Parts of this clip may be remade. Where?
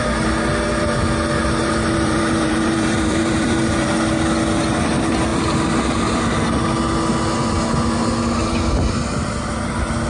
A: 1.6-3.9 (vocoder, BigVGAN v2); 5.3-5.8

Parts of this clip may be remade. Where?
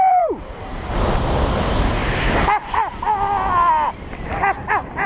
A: 0.0-2.0 (vocoder, BigVGAN v2)